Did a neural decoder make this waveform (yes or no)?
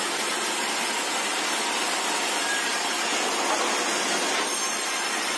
no